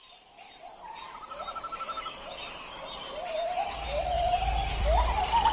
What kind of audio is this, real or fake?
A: real